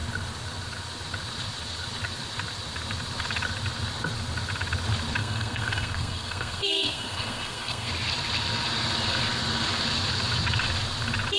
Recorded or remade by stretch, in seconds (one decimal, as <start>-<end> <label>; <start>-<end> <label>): 0.0-5.2 recorded; 5.2-7.9 remade; 7.9-11.4 recorded

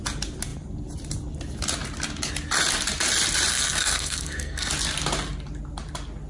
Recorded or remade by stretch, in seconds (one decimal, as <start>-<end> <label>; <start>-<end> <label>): 0.0-3.5 recorded; 3.5-4.7 remade; 4.7-6.3 recorded

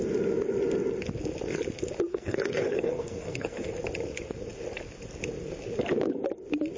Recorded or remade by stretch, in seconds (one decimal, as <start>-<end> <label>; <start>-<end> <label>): 0.0-2.1 recorded; 2.1-3.7 remade; 3.7-6.8 recorded

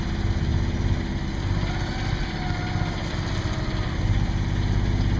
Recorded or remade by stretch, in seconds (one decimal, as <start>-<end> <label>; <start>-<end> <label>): 0.0-5.2 recorded

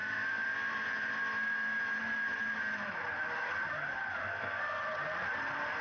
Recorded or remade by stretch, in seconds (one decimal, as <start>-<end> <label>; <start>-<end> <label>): 0.0-4.3 recorded; 4.3-4.8 remade; 4.8-5.8 recorded

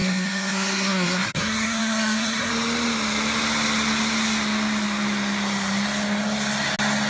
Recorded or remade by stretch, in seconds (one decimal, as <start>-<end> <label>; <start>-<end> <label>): 0.0-2.5 remade; 2.5-7.1 recorded

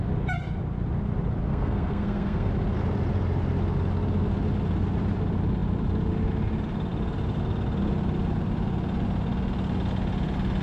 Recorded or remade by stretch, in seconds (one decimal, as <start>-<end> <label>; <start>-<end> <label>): 0.0-1.5 recorded; 1.5-2.5 remade; 2.5-10.6 recorded